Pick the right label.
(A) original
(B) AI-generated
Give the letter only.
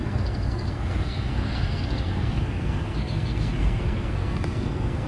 B